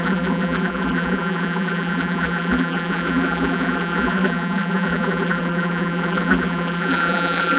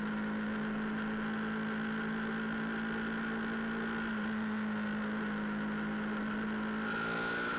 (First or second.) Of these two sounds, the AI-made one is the first